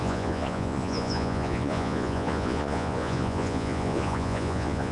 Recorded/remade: remade